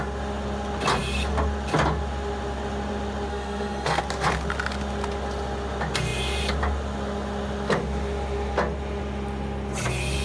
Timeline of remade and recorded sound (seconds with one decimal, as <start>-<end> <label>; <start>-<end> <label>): 0.0-3.3 recorded; 3.3-4.0 remade; 4.0-10.2 recorded